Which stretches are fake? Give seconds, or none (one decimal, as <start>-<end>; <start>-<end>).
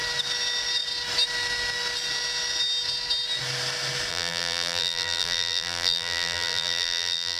4.1-7.4